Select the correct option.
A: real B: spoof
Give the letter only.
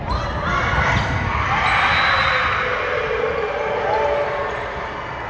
A